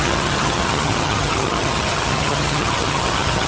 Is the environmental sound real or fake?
fake